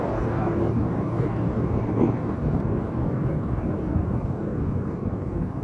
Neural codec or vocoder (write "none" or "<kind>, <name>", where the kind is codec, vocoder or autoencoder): codec, DAC